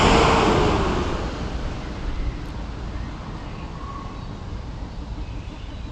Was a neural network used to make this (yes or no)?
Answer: no